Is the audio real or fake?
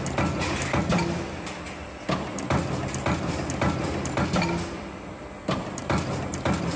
real